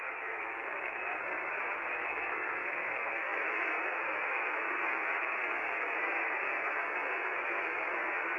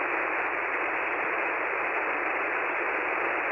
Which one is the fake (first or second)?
first